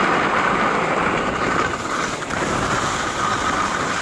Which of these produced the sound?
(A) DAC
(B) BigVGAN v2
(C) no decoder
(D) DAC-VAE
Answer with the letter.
C